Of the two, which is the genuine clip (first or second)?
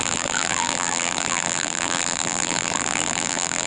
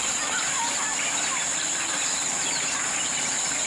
second